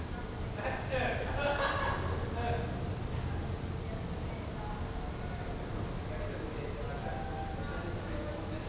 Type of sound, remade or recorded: recorded